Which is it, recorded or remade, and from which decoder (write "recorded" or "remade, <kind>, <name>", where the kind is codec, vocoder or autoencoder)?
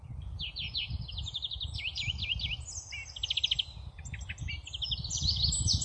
recorded